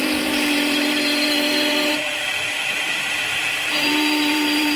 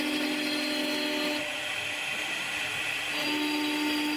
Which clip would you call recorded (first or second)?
second